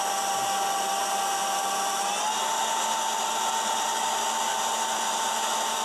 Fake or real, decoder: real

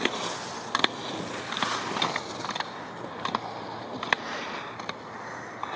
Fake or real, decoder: real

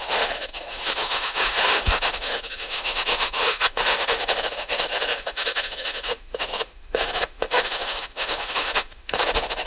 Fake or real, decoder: fake, autoencoder, DAC-VAE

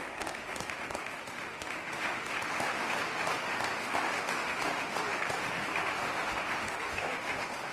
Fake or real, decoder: fake, autoencoder, DAC-VAE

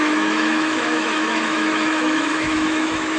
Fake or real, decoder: fake, autoencoder, DAC-VAE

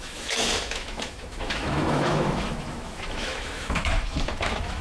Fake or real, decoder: fake, autoencoder, DAC-VAE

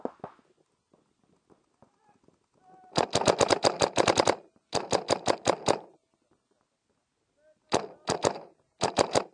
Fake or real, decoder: real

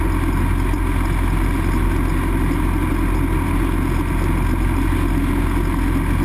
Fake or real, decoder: real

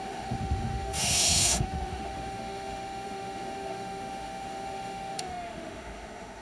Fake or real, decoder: fake, autoencoder, DAC-VAE